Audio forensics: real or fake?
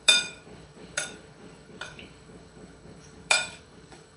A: fake